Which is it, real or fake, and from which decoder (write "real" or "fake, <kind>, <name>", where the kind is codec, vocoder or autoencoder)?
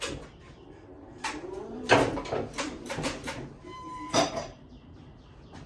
fake, vocoder, BigVGAN v2